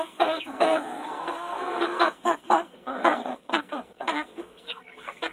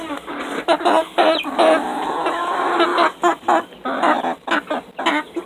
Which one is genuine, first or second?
second